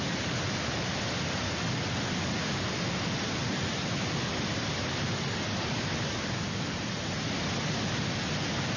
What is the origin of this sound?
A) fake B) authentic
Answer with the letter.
B